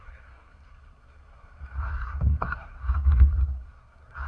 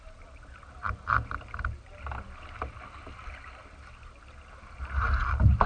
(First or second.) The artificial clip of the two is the first